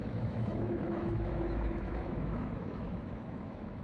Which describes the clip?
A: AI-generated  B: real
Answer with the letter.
A